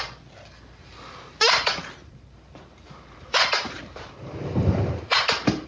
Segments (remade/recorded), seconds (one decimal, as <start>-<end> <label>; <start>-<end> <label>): 0.0-2.0 recorded; 2.0-5.7 remade